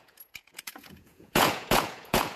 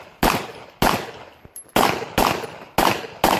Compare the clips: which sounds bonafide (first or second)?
second